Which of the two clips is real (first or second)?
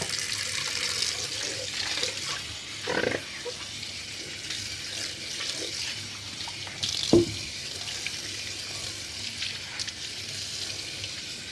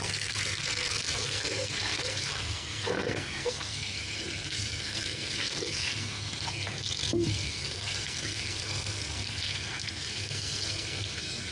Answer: first